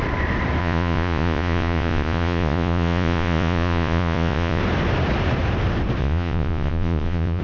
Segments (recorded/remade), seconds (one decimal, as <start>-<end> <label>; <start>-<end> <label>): 0.0-0.6 recorded; 0.6-4.6 remade; 4.6-6.0 recorded; 6.0-7.4 remade